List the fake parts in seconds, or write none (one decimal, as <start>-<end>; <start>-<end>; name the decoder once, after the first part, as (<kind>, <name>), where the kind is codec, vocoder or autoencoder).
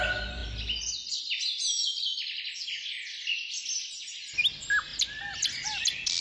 none